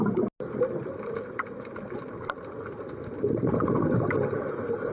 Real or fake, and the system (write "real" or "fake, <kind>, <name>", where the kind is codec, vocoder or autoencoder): real